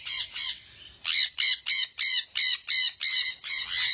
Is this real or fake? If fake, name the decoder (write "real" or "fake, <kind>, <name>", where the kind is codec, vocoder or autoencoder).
real